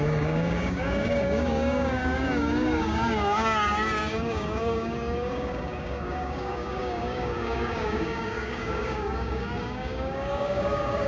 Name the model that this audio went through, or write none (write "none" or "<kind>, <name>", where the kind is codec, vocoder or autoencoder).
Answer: codec, DAC